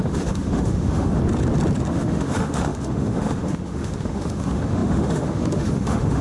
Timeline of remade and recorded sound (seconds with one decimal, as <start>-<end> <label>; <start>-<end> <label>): 0.0-1.2 remade; 1.2-1.9 recorded; 1.9-6.2 remade